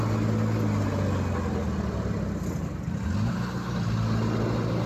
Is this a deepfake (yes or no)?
no